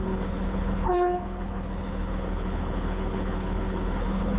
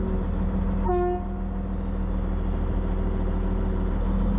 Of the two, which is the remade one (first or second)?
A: first